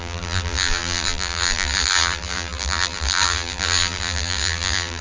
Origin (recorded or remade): remade